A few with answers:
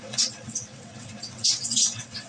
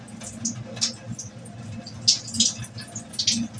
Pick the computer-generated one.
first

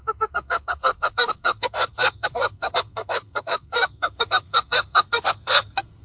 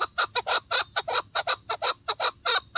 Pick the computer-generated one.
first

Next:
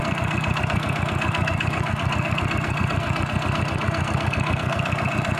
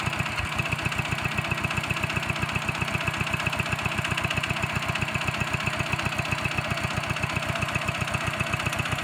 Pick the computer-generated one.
first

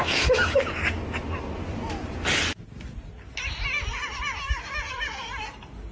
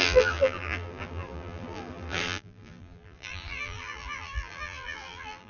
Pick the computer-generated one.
second